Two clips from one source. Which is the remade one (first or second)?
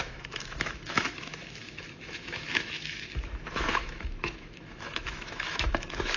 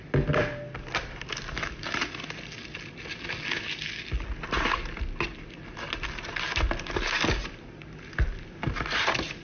first